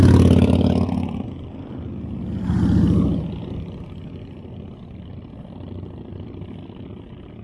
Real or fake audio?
real